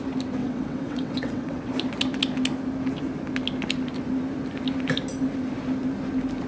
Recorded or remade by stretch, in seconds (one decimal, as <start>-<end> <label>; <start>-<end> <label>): 0.0-0.4 recorded; 0.4-1.7 remade; 1.7-6.5 recorded